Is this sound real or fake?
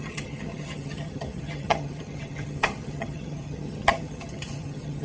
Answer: fake